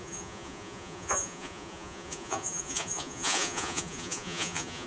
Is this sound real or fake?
fake